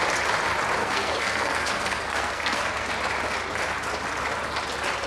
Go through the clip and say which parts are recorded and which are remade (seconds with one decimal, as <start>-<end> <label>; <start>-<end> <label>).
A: 0.0-0.8 recorded; 0.8-2.9 remade; 2.9-5.1 recorded